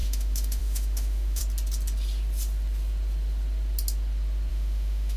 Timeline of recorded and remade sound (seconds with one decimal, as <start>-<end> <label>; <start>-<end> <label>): 0.0-1.4 remade; 1.4-4.5 recorded; 4.5-5.2 remade